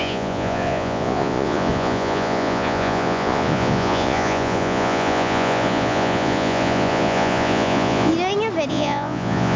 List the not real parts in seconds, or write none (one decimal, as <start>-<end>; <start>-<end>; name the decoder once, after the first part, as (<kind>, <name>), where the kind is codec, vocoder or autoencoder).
0.0-8.1 (vocoder, Vocos); 8.7-9.6